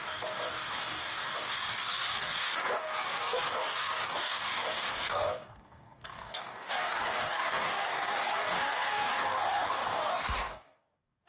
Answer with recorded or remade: remade